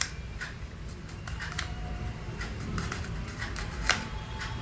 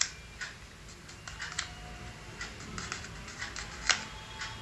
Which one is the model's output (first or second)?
first